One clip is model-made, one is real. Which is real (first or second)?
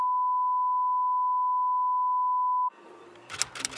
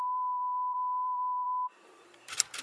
first